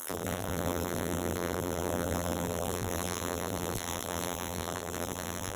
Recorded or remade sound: remade